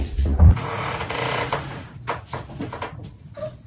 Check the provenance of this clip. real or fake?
fake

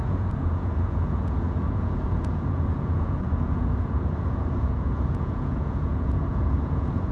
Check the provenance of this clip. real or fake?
fake